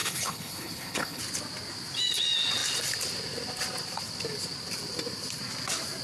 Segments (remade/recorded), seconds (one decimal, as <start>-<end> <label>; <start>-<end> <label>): 0.0-1.2 remade; 1.2-6.0 recorded